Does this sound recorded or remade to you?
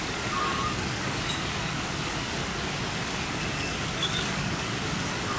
remade